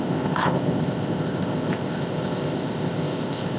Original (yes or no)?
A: no